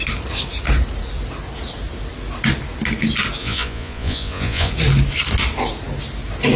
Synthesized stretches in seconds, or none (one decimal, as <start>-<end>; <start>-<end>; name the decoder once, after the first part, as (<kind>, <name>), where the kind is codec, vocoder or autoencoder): 3.4-4.7 (vocoder, Vocos)